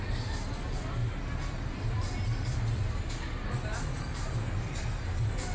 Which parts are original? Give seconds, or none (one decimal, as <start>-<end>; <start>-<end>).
0.0-5.5